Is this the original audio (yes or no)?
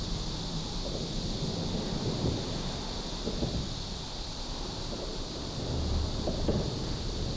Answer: yes